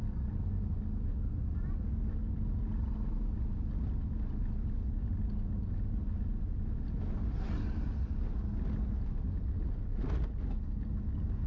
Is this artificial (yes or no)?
no